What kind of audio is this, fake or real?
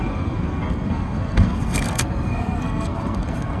fake